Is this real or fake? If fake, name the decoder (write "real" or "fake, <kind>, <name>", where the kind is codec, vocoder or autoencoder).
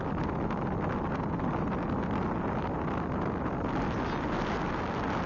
real